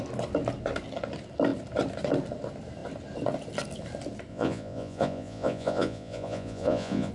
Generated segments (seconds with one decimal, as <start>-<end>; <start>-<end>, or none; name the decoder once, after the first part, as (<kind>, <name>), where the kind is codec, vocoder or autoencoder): 4.3-7.1 (vocoder, Vocos)